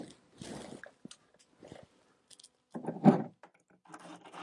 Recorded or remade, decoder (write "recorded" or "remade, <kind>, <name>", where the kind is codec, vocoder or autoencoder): recorded